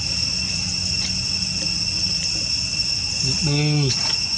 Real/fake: real